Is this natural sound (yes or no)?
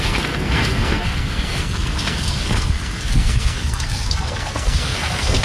no